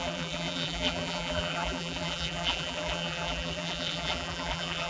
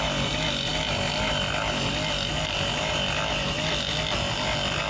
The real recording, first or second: second